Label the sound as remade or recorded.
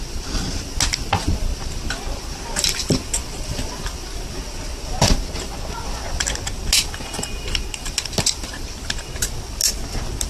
recorded